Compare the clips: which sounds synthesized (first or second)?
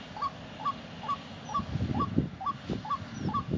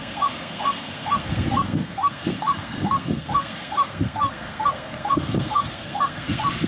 second